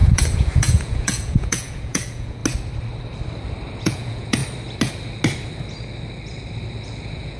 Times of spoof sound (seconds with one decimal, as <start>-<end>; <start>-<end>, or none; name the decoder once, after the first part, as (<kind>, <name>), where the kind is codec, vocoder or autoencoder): 0.0-2.4 (vocoder, Vocos); 3.8-4.4; 7.0-7.4